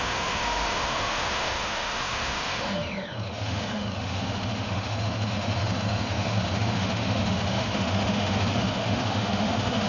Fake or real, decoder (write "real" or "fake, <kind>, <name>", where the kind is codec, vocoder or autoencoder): fake, autoencoder, DAC-VAE